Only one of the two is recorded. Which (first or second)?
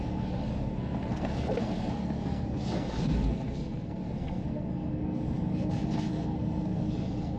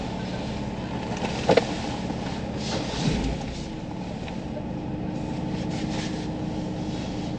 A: second